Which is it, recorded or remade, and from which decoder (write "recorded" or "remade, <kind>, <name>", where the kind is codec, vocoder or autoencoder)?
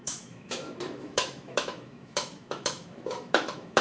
remade, autoencoder, DAC-VAE